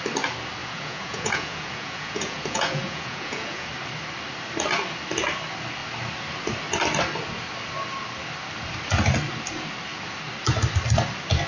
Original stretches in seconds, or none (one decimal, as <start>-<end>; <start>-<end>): 0.0-0.6; 3.7-11.5